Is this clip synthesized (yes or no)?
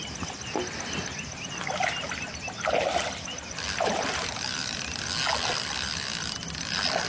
no